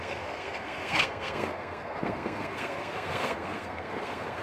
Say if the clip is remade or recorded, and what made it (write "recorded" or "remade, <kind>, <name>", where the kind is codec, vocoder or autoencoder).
remade, codec, SNAC